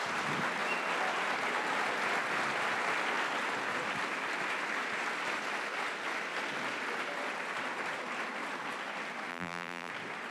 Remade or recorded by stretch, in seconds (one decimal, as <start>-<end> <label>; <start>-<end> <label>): 0.0-9.3 recorded; 9.3-9.9 remade; 9.9-10.3 recorded